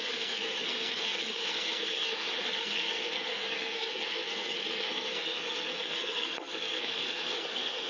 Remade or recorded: remade